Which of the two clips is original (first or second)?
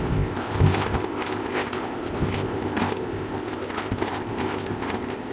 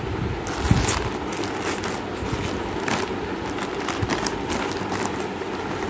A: second